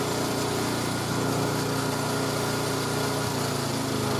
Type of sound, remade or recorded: recorded